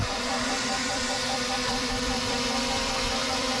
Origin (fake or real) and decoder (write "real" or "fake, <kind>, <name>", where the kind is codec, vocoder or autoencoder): fake, vocoder, BigVGAN v2